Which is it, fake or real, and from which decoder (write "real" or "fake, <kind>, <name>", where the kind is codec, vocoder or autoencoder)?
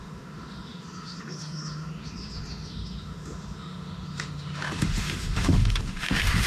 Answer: fake, autoencoder, DAC-VAE